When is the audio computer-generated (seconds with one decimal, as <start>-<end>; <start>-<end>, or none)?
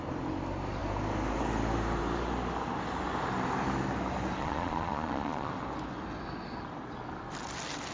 4.4-5.5